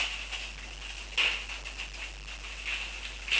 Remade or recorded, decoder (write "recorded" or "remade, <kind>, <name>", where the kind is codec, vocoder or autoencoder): recorded